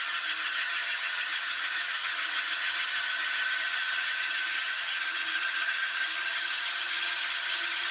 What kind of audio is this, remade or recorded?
remade